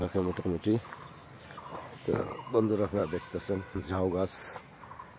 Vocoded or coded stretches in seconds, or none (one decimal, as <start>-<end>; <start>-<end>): 0.0-0.8